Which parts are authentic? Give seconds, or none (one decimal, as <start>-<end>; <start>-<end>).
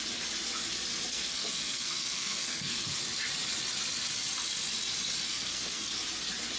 0.0-1.1; 3.0-5.3; 5.9-6.6